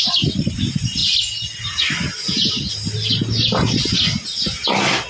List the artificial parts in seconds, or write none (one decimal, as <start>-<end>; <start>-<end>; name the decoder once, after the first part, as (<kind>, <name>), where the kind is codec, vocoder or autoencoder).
none